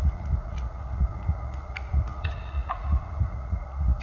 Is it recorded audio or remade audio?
remade